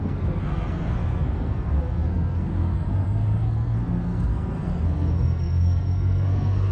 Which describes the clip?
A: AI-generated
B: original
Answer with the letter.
A